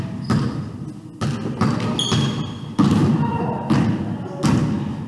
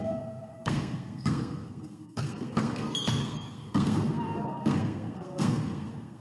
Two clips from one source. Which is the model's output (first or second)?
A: second